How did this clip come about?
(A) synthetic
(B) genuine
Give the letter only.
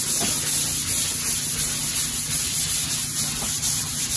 B